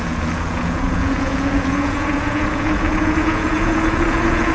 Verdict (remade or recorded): remade